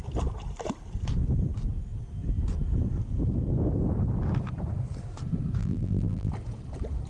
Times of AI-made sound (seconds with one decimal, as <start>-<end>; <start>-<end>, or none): 5.6-6.3